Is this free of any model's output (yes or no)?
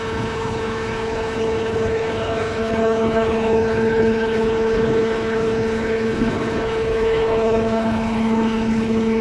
no